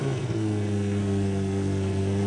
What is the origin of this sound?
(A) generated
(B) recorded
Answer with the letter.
A